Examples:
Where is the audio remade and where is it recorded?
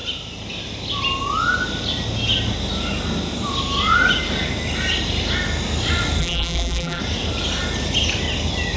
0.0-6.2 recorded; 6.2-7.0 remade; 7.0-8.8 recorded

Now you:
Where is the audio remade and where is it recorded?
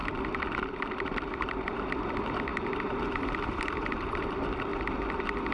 0.0-0.6 recorded; 0.6-4.7 remade; 4.7-5.5 recorded